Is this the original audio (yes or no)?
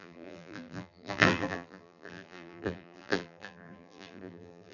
no